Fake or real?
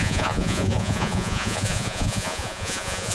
fake